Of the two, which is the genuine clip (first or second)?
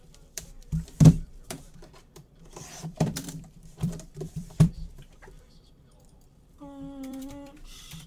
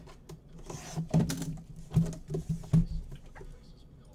second